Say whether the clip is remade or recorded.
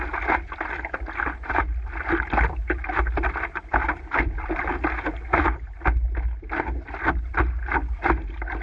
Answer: recorded